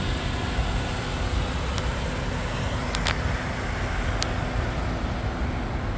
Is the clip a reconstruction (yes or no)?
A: no